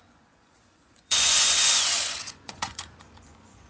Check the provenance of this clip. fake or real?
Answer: fake